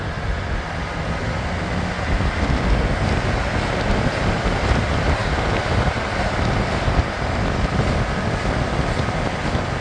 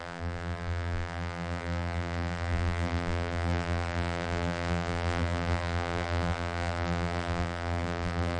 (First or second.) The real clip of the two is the first